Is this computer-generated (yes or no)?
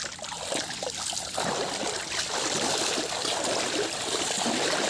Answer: no